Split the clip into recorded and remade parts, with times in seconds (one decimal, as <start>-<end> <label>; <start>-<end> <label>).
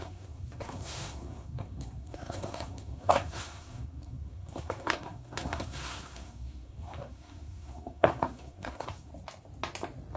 0.0-9.1 remade; 9.1-10.2 recorded